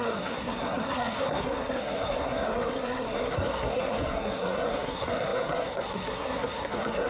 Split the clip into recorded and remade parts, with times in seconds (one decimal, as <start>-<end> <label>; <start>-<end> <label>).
0.0-7.1 remade

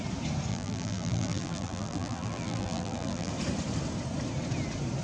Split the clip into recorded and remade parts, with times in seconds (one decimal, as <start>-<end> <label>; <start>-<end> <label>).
0.0-0.5 recorded; 0.5-3.3 remade; 3.3-5.0 recorded

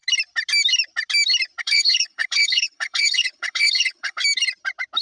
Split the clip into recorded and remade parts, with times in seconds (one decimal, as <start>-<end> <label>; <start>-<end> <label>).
0.0-1.6 recorded; 1.6-4.2 remade; 4.2-5.0 recorded

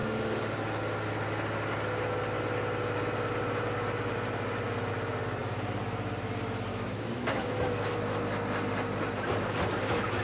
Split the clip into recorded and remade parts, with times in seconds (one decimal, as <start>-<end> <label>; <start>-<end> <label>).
0.0-6.7 recorded; 6.7-8.2 remade; 8.2-10.2 recorded

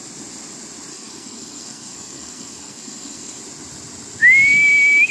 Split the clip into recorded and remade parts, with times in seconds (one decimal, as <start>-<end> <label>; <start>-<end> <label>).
0.0-0.9 recorded; 0.9-3.4 remade; 3.4-5.1 recorded

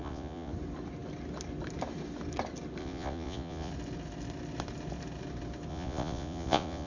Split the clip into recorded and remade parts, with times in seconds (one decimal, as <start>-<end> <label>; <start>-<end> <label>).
0.0-0.5 remade; 0.5-2.8 recorded; 2.8-3.7 remade; 3.7-5.7 recorded; 5.7-6.9 remade

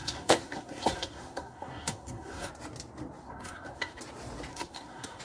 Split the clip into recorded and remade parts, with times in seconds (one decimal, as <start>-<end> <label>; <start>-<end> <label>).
0.0-2.5 remade; 2.5-3.2 recorded; 3.2-4.0 remade; 4.0-4.5 recorded; 4.5-5.2 remade